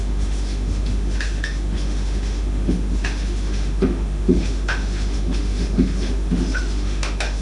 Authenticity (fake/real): fake